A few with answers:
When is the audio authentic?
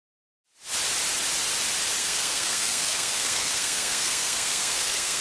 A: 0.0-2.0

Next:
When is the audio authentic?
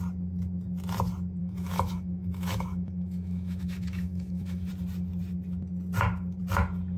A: 0.0-1.4; 4.7-7.0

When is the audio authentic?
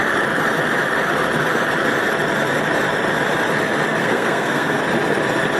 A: 0.0-4.0; 4.8-5.6